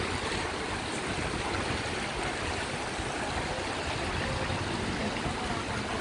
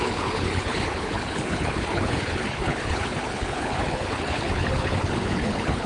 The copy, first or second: second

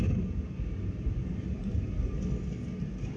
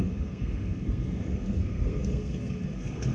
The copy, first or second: second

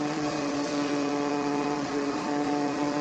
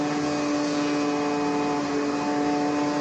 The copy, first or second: first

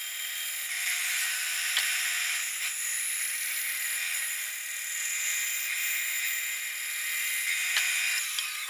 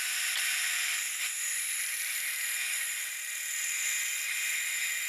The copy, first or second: second